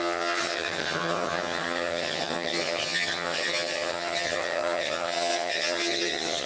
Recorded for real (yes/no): no